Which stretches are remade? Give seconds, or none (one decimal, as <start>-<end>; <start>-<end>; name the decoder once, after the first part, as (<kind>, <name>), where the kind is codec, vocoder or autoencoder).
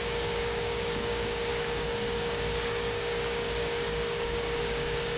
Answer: 0.0-5.2 (codec, DAC)